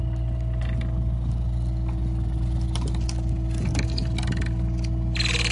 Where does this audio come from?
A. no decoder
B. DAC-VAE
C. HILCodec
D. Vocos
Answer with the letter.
A